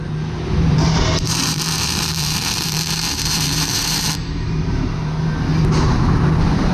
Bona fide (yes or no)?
no